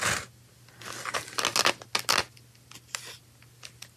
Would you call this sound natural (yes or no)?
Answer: yes